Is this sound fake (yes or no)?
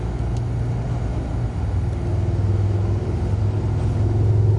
no